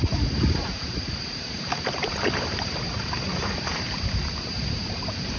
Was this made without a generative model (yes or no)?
no